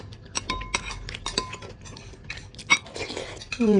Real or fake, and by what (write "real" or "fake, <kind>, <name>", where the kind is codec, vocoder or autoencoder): real